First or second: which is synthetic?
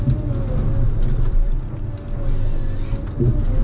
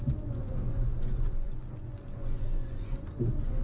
second